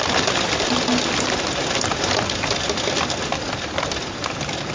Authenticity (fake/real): real